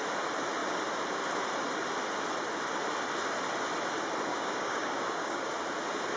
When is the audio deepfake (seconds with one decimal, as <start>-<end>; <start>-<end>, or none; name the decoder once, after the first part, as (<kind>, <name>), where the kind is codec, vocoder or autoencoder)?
4.3-5.5 (codec, DAC)